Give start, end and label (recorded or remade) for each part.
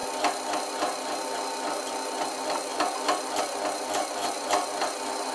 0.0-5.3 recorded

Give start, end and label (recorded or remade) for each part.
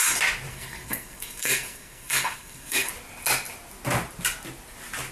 0.0-0.5 recorded; 0.5-2.9 remade; 2.9-5.1 recorded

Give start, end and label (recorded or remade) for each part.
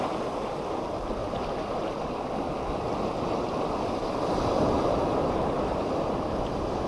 0.0-6.9 recorded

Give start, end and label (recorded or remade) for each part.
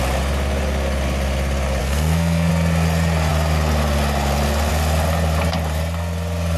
0.0-1.8 recorded; 1.8-2.5 remade; 2.5-6.6 recorded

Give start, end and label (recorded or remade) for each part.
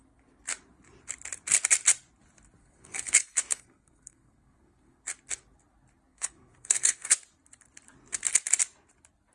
0.0-2.6 recorded; 2.6-5.0 remade; 5.0-6.1 recorded; 6.1-7.1 remade; 7.1-9.3 recorded